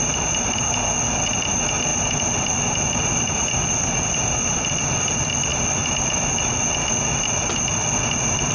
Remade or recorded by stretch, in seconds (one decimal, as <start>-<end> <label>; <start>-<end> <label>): 0.0-8.5 recorded